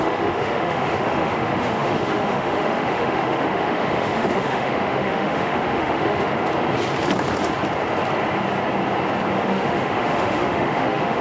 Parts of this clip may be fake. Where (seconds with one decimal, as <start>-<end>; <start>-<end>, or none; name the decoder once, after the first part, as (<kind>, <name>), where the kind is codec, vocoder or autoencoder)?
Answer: 0.0-6.3 (autoencoder, DAC-VAE); 9.3-11.2